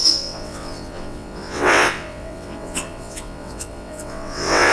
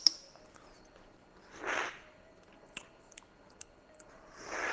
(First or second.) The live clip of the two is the second